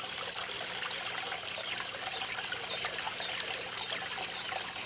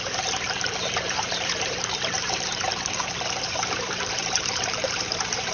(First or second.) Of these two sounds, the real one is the first